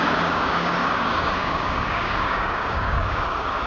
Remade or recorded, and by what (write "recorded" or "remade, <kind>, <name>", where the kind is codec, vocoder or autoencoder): remade, codec, DAC